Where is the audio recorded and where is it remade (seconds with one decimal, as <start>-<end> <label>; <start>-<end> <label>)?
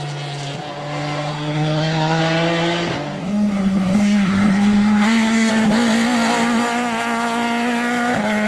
0.0-1.3 recorded; 1.3-2.2 remade; 2.2-3.2 recorded; 3.2-5.5 remade; 5.5-8.5 recorded